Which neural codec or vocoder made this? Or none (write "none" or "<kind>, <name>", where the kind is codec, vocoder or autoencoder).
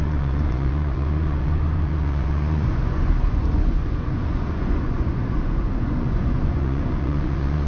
vocoder, Vocos